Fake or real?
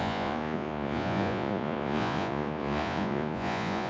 fake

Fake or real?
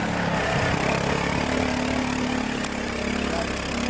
real